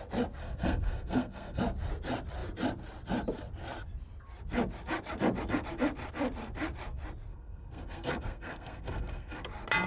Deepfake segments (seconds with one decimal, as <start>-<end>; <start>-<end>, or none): 0.4-1.6; 7.3-9.4